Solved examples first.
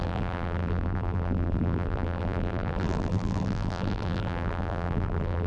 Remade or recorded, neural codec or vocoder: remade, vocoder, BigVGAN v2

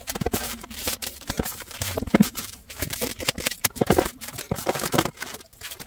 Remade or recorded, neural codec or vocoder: remade, vocoder, BigVGAN v2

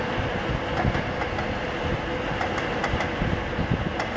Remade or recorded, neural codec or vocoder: recorded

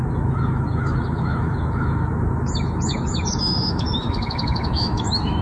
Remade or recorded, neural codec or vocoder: remade, autoencoder, DAC-VAE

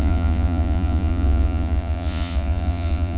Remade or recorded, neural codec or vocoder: remade, vocoder, Vocos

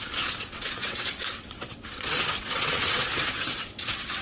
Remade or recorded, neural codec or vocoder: remade, vocoder, WaveNeXt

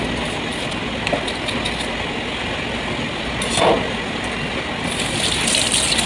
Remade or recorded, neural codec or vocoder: recorded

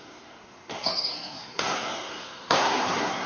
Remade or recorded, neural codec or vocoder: remade, codec, SNAC